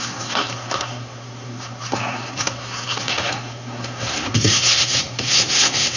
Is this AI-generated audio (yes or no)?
yes